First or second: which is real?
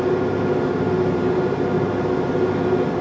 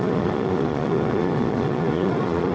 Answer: first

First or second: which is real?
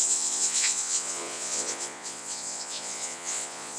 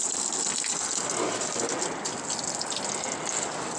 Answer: second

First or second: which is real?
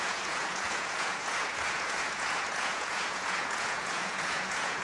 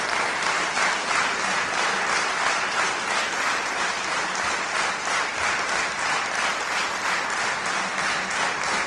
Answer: second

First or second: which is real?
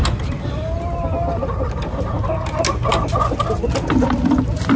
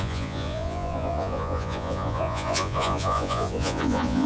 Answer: first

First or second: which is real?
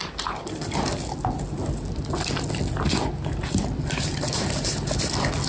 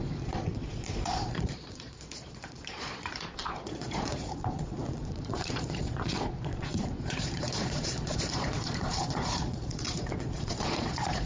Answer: first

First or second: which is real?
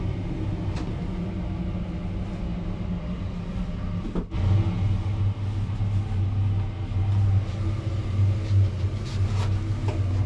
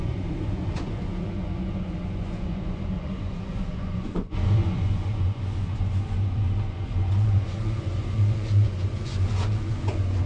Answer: first